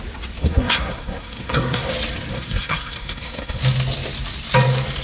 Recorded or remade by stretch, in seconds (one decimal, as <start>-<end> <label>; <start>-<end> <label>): 0.0-0.4 recorded; 0.4-1.9 remade; 1.9-2.3 recorded; 2.3-3.6 remade; 3.6-5.0 recorded